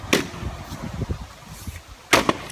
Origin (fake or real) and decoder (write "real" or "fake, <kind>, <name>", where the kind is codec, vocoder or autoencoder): real